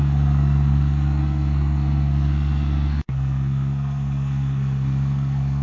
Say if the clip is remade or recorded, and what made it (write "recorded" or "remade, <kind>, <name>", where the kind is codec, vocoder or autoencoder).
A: remade, codec, SNAC